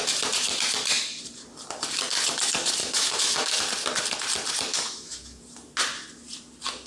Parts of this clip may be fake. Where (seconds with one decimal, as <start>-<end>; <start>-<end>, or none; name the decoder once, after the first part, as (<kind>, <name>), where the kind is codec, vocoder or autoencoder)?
2.8-3.6 (autoencoder, DAC-VAE); 4.7-5.4